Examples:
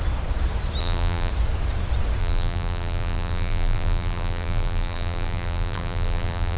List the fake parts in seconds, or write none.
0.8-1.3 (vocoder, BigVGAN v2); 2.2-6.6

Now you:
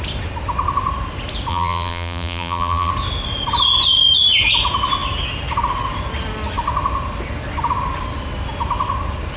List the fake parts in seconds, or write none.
1.5-2.9 (vocoder, BigVGAN v2)

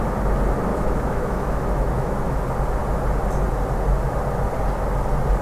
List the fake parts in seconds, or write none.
0.7-2.4 (autoencoder, DAC-VAE)